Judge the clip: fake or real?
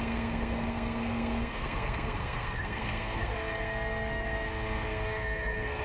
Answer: fake